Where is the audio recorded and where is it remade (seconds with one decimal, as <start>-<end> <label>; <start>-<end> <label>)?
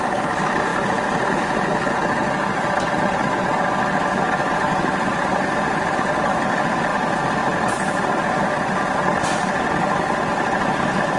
0.0-4.7 recorded; 4.7-6.4 remade; 6.4-11.2 recorded